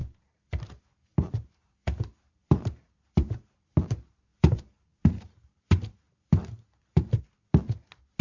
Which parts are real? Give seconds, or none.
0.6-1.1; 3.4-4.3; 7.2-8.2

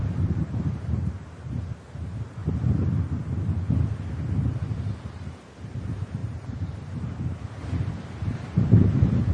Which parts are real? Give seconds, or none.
2.4-4.5

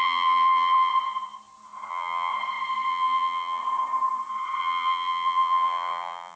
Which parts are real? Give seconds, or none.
0.9-1.9; 2.3-2.9; 3.6-4.6